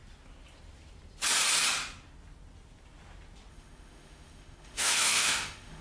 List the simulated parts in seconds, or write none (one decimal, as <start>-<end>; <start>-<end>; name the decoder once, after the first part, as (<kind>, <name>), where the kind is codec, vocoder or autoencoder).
3.5-5.8 (autoencoder, DAC-VAE)